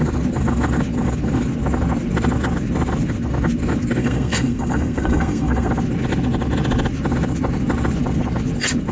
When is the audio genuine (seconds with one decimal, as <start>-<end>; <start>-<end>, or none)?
0.0-4.0; 5.7-8.9